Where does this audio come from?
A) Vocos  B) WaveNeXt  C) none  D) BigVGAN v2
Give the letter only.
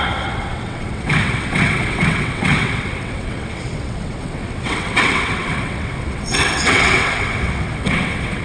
B